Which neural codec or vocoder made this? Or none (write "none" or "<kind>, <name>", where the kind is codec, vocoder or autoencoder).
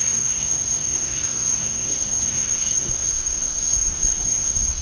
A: codec, SNAC